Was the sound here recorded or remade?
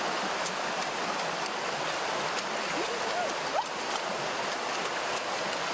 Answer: recorded